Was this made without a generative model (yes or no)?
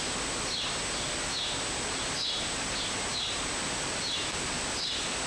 yes